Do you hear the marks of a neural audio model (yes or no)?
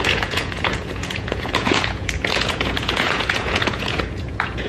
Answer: yes